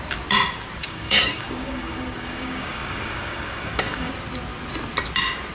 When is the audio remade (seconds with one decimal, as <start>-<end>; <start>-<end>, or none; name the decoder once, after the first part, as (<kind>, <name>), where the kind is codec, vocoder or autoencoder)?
0.8-4.1 (codec, DAC)